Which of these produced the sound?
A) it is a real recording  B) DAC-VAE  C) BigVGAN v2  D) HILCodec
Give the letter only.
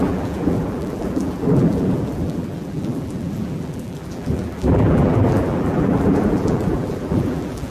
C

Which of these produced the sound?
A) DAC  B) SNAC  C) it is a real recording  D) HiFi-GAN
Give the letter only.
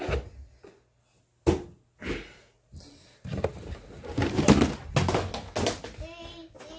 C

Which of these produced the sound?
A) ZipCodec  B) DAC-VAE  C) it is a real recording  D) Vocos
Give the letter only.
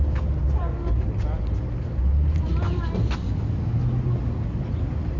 C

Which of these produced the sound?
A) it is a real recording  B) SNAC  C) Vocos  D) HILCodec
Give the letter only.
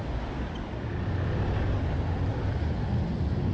A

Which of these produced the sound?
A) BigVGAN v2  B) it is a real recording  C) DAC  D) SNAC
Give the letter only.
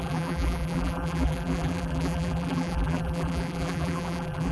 A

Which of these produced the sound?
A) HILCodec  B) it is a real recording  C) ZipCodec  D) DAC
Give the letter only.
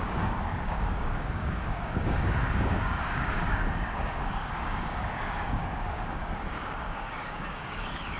D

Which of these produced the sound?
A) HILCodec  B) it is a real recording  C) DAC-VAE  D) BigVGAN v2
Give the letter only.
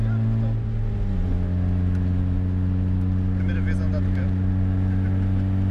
B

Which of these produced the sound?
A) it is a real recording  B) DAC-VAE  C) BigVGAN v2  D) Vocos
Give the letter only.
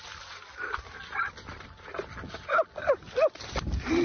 A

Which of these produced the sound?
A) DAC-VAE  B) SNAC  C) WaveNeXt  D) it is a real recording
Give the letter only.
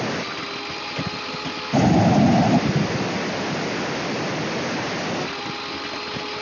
D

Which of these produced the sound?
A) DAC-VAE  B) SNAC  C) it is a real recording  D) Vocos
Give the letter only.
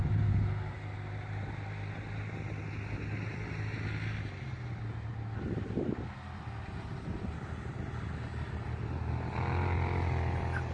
C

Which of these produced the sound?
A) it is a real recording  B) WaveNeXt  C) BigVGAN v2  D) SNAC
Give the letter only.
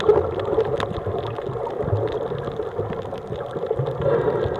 A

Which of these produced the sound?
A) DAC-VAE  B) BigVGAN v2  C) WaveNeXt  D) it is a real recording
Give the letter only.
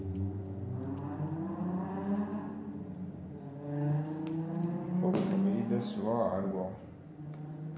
D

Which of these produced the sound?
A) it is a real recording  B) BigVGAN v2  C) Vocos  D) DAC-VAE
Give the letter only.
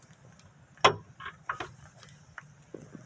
A